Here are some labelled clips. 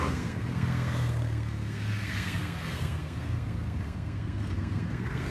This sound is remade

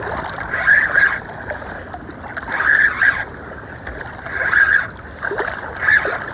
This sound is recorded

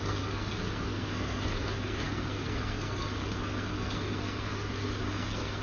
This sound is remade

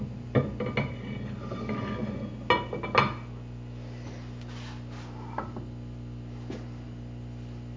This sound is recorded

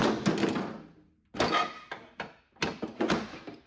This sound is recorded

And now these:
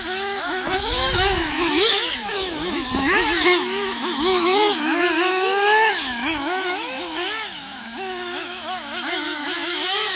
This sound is remade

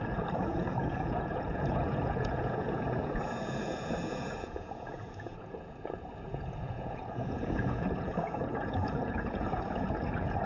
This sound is remade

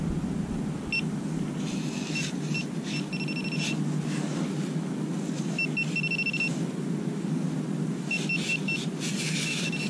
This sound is recorded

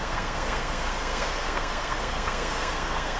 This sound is remade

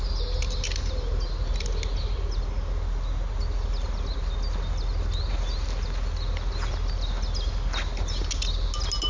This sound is recorded